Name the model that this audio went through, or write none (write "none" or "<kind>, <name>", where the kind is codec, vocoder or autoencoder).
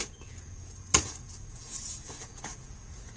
vocoder, Vocos